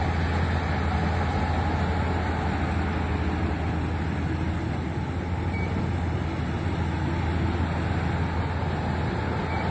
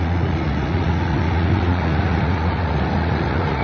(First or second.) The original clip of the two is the first